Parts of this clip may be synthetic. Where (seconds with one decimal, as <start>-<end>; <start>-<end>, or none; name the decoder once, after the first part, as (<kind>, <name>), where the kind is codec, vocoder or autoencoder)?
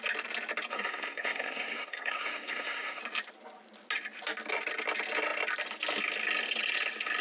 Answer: 0.7-3.0 (codec, SNAC)